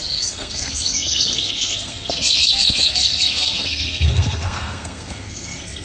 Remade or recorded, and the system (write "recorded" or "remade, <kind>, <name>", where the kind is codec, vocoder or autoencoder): remade, codec, SNAC